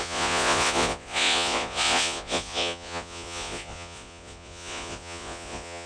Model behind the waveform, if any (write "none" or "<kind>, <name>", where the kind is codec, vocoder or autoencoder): vocoder, Vocos